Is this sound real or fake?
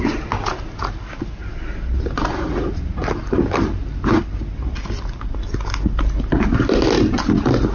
real